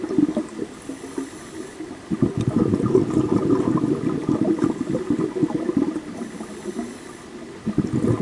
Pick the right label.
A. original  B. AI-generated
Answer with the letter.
A